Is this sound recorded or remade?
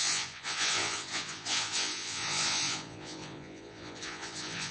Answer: remade